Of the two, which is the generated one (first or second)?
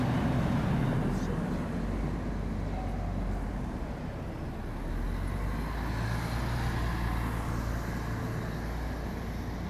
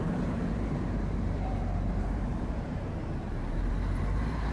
second